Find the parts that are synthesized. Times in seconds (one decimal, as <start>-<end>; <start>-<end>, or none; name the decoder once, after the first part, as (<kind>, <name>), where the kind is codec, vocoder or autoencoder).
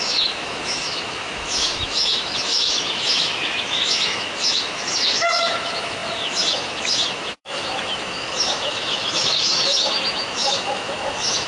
0.0-11.5 (autoencoder, DAC-VAE)